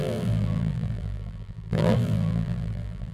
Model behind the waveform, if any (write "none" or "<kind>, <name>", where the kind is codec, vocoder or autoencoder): vocoder, BigVGAN v2